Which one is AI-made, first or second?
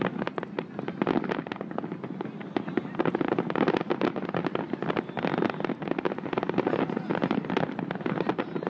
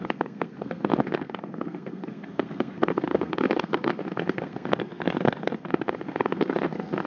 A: second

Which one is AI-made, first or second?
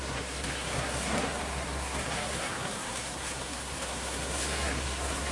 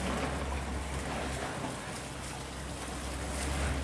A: first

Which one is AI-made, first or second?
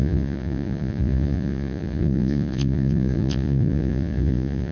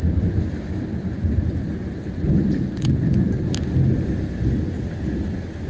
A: first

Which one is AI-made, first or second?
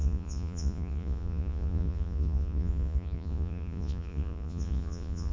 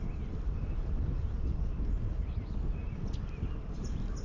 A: first